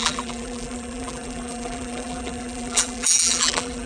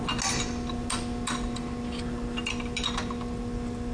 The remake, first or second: first